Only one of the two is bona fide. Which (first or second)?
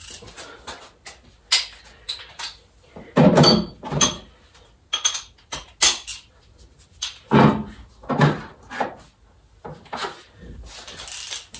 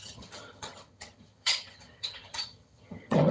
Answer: first